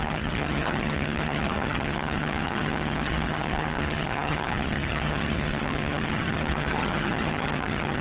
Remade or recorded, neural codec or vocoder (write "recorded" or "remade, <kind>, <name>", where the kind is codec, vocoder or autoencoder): remade, vocoder, HiFi-GAN